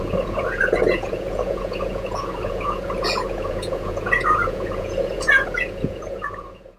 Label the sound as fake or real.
fake